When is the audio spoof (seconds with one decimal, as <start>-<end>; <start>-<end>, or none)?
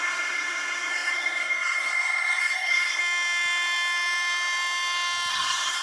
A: 0.0-3.0; 5.3-5.8